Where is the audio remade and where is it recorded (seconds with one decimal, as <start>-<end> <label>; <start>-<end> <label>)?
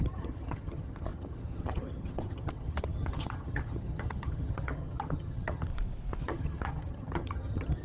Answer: 0.0-5.7 remade; 5.7-6.2 recorded; 6.2-7.8 remade